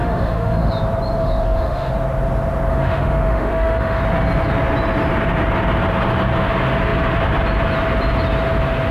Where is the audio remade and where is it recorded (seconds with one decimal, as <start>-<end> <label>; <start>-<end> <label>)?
0.0-0.7 remade; 0.7-1.2 recorded; 1.2-1.9 remade; 1.9-2.7 recorded; 2.7-4.0 remade; 4.0-8.9 recorded